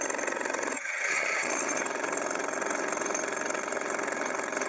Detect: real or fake fake